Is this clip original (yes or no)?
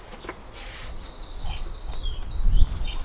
yes